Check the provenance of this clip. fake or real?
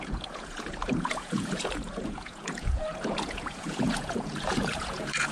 fake